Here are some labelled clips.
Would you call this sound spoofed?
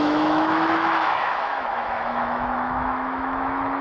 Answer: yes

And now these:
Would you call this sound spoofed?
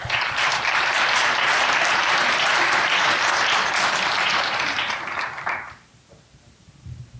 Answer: yes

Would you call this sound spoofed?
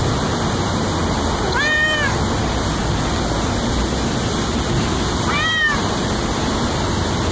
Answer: no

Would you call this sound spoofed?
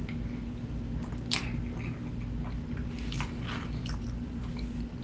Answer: no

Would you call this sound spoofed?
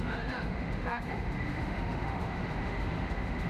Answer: yes